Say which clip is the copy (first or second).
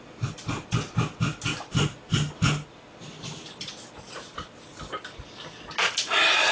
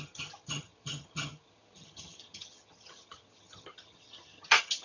second